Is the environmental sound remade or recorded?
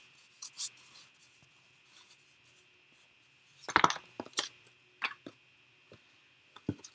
recorded